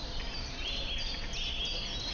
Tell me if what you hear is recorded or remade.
recorded